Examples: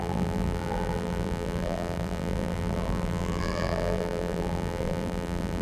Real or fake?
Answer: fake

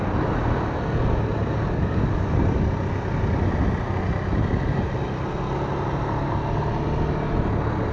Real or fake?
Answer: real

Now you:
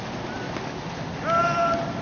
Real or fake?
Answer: real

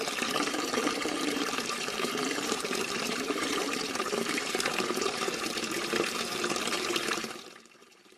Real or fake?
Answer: fake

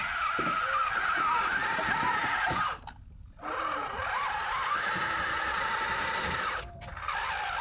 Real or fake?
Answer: real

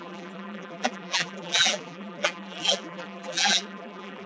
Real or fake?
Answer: fake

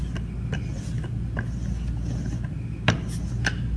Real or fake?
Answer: real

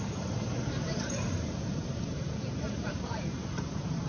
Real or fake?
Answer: fake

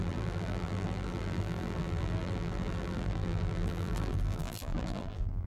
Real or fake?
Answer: fake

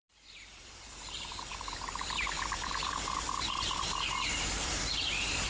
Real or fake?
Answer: fake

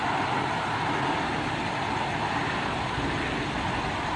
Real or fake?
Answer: real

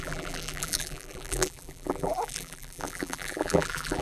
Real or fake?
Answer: fake